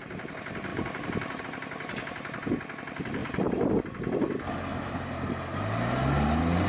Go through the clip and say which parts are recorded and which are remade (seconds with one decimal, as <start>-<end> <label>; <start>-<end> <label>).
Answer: 0.0-0.7 recorded; 0.7-1.4 remade; 1.4-3.2 recorded; 3.2-3.8 remade; 3.8-4.7 recorded; 4.7-5.3 remade; 5.3-6.7 recorded